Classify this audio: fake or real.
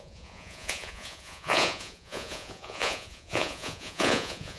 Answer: fake